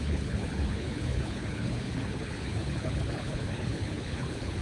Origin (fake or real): fake